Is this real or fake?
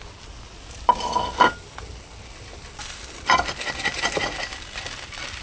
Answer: real